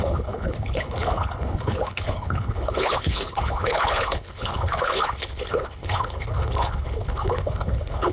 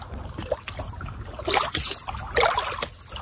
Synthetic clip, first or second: first